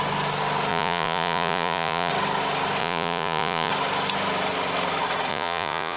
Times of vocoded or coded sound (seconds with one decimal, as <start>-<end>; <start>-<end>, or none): 0.7-2.1; 2.8-3.7; 5.3-6.0